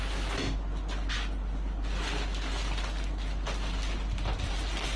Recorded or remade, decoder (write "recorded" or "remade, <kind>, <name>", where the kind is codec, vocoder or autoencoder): recorded